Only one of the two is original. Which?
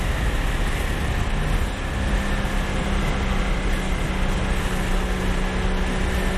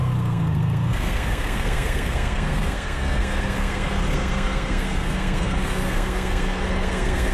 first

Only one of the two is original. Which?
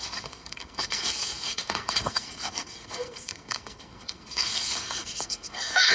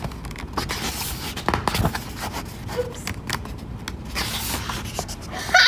second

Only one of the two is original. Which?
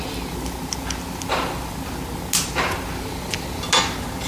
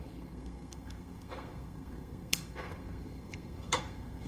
first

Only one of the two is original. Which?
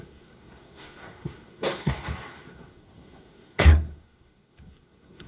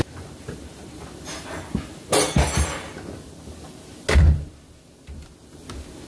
second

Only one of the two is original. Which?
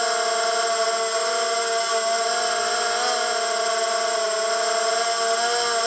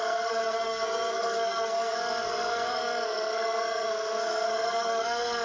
first